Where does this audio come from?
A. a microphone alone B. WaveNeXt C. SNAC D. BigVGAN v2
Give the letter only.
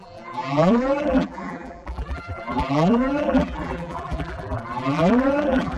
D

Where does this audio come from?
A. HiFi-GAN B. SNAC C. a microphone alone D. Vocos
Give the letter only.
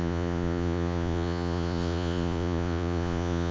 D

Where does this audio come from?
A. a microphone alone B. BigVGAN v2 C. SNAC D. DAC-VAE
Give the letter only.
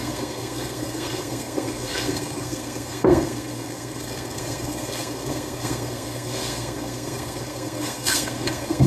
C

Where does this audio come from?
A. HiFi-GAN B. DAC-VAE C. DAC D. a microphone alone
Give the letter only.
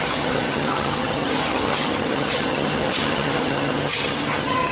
A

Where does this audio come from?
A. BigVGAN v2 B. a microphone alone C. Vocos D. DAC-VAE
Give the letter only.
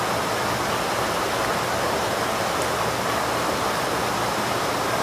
B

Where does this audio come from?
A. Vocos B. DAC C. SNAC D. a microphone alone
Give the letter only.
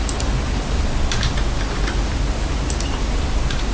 D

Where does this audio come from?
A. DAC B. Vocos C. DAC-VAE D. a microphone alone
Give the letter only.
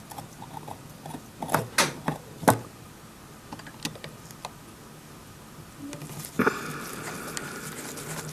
D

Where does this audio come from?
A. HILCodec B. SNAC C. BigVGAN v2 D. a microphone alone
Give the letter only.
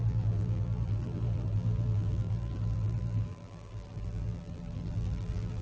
C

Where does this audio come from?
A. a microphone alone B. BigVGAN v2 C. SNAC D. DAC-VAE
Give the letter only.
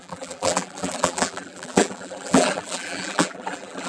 B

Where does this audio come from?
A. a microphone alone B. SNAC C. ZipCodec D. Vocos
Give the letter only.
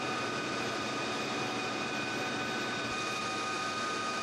A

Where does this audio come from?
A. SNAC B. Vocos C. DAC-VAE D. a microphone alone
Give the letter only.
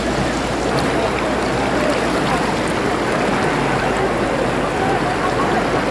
D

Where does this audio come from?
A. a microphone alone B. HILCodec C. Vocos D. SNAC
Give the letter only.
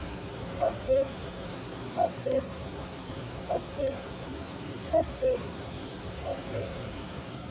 D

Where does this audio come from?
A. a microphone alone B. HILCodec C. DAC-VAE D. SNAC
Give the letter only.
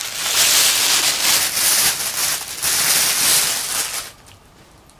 A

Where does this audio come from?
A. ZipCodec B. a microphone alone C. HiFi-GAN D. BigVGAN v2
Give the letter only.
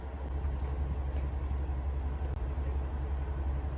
B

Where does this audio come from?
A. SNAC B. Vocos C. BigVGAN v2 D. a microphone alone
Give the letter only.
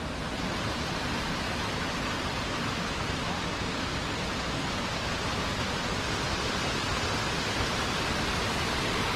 D